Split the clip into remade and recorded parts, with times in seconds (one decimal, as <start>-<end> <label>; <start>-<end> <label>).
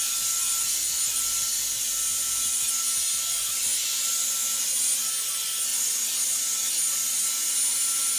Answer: 0.0-8.2 recorded